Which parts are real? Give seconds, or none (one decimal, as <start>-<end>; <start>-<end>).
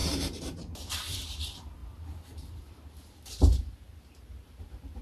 none